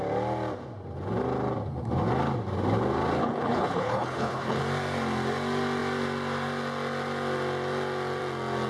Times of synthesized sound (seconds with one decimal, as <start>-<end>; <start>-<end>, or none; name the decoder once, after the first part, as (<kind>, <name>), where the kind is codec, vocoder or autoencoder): 3.2-4.6 (codec, HILCodec)